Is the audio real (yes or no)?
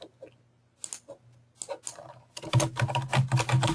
yes